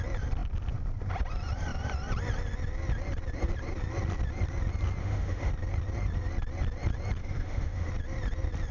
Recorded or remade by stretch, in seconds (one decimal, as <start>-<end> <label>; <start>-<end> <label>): 0.0-5.0 recorded; 5.0-5.5 remade; 5.5-7.2 recorded; 7.2-7.9 remade; 7.9-8.7 recorded